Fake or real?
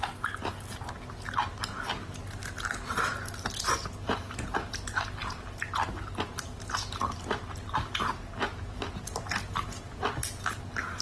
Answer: real